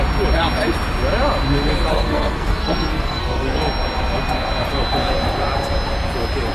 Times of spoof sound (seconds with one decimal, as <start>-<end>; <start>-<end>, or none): 1.9-3.6